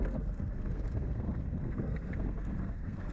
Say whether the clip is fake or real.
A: fake